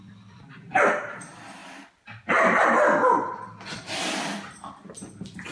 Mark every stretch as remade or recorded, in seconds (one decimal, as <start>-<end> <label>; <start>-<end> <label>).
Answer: 0.0-5.5 remade